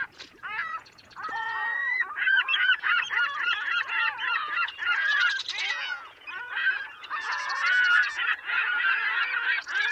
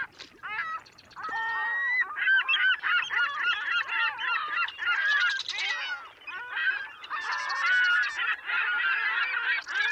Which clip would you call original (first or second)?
second